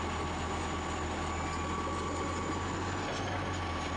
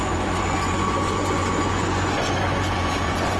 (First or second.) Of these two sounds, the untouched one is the first